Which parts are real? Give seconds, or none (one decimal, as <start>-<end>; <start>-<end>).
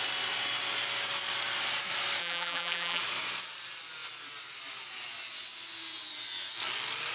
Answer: 0.0-2.2; 3.0-7.1